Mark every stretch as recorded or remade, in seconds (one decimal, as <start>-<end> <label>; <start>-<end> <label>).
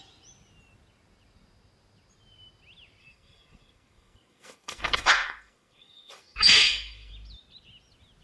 0.0-3.0 recorded; 3.0-7.1 remade; 7.1-8.2 recorded